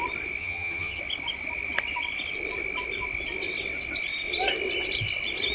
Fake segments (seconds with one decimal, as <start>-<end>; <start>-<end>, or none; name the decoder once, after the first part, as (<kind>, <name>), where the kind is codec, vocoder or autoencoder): 0.4-1.0 (vocoder, HiFi-GAN)